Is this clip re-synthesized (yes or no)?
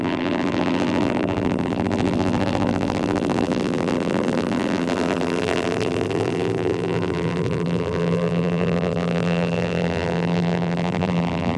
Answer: yes